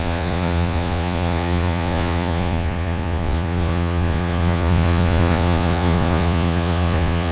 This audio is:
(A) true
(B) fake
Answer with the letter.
B